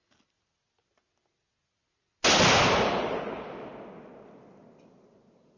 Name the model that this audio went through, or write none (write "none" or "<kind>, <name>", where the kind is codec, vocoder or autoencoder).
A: none